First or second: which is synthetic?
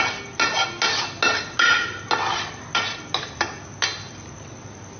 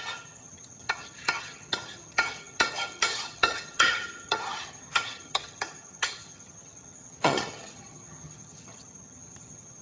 second